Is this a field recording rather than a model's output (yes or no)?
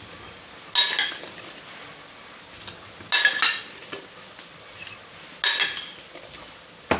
yes